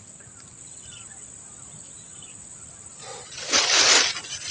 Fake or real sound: real